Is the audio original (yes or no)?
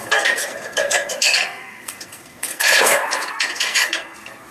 no